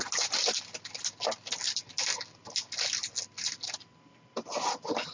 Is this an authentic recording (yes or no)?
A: yes